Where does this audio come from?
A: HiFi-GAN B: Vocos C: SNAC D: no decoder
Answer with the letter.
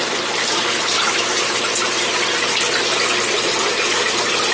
D